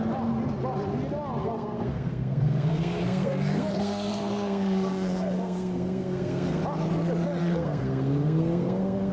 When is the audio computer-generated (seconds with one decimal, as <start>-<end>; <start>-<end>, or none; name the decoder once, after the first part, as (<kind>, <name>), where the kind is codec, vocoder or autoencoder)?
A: 1.4-6.6 (codec, SNAC); 7.4-9.1